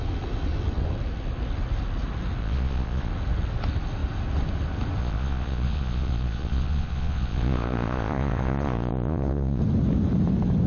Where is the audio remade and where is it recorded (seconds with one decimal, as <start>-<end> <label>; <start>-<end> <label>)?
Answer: 0.0-2.4 recorded; 2.4-3.1 remade; 3.1-5.0 recorded; 5.0-9.6 remade; 9.6-10.7 recorded